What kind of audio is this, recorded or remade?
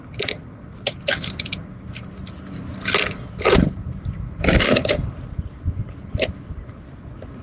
recorded